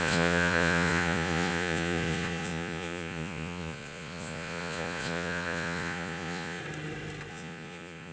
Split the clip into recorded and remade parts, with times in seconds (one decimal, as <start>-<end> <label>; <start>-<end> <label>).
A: 0.0-6.6 remade; 6.6-7.3 recorded; 7.3-8.1 remade